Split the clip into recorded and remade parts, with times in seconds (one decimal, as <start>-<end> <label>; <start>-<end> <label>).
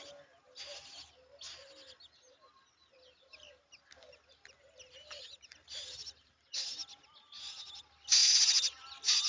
0.0-9.3 recorded